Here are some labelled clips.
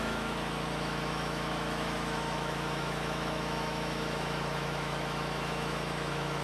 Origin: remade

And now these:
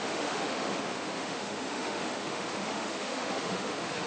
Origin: remade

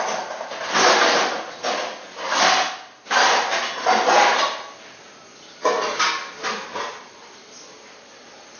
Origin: recorded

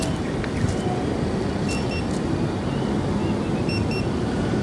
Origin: recorded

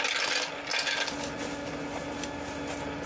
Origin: recorded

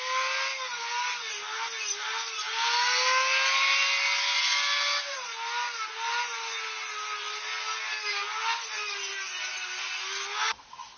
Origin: recorded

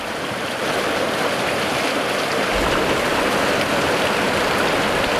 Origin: recorded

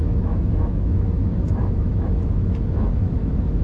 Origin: remade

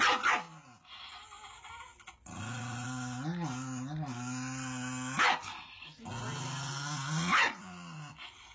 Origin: recorded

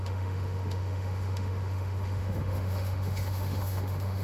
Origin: remade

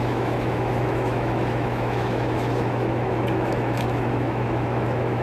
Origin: remade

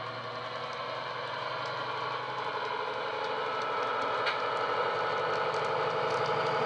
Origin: recorded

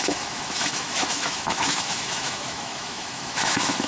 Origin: remade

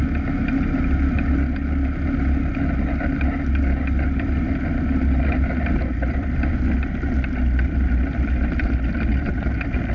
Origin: recorded